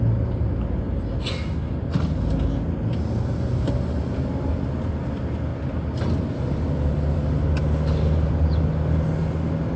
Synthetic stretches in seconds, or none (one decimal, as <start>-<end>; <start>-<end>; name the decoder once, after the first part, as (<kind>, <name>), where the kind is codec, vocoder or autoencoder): none